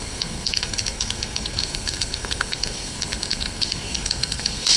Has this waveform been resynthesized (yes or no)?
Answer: yes